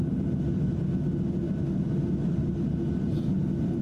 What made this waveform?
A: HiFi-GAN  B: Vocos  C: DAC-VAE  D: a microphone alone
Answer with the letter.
D